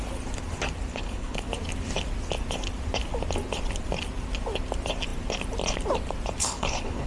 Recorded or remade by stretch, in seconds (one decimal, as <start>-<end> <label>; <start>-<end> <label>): 0.0-0.9 recorded; 0.9-1.5 remade; 1.5-6.4 recorded; 6.4-7.1 remade